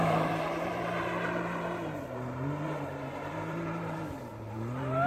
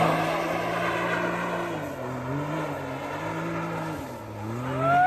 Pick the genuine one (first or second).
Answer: second